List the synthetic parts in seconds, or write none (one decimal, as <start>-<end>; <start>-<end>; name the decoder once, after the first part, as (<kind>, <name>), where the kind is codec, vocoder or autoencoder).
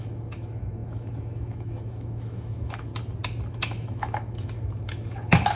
0.0-2.9 (autoencoder, DAC-VAE); 3.5-5.6